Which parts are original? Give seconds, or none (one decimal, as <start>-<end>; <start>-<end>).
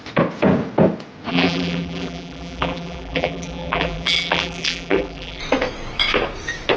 0.0-1.3; 5.4-6.8